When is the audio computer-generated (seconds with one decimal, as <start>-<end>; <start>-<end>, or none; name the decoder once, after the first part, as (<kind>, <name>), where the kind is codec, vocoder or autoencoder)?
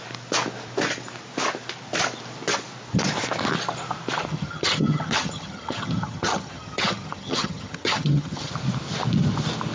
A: 4.3-8.5 (vocoder, HiFi-GAN)